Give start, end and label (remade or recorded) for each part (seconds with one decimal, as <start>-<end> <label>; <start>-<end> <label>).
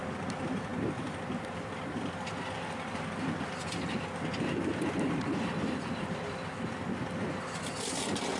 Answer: 0.0-8.4 recorded